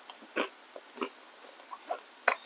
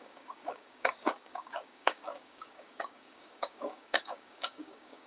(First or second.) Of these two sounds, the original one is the first